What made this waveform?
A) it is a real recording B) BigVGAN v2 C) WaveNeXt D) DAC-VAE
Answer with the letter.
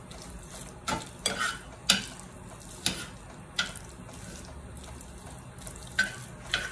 A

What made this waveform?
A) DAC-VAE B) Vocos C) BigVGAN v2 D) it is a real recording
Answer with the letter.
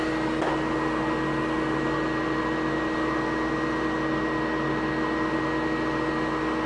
D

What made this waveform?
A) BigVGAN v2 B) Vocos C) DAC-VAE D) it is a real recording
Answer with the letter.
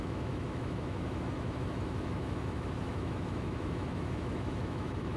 C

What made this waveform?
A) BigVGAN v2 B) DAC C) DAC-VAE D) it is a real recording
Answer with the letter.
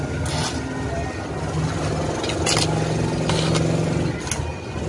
D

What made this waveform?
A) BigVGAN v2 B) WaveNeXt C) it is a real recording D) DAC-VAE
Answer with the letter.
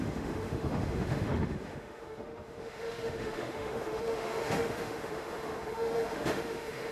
D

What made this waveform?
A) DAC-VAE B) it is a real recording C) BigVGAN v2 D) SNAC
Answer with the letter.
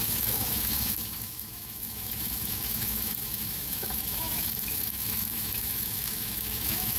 A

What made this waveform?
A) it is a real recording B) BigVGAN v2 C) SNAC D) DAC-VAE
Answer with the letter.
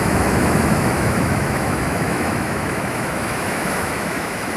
D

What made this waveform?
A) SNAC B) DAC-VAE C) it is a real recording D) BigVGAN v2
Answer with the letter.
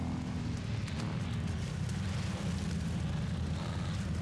C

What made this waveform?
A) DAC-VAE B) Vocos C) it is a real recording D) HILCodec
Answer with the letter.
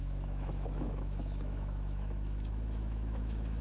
A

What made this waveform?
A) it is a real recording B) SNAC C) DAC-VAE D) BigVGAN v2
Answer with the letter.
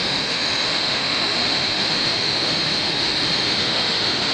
C